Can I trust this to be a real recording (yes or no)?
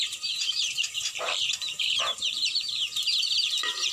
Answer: no